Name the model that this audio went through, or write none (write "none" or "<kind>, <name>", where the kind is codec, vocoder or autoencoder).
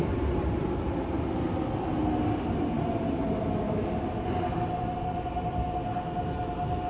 none